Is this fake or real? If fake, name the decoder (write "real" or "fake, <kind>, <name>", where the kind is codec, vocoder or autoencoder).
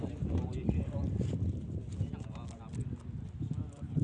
real